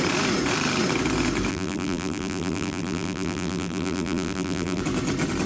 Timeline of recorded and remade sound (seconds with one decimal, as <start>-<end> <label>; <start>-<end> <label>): 0.0-1.5 recorded; 1.5-4.8 remade; 4.8-5.5 recorded